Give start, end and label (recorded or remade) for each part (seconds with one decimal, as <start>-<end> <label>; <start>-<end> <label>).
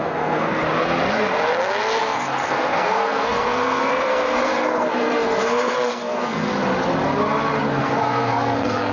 0.0-0.6 remade; 0.6-2.0 recorded; 2.0-6.5 remade; 6.5-7.8 recorded; 7.8-8.9 remade